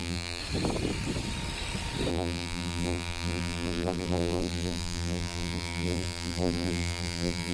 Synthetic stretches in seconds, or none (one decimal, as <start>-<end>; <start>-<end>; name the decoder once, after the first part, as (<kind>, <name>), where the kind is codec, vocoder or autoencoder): 0.0-0.4 (vocoder, BigVGAN v2); 2.1-7.5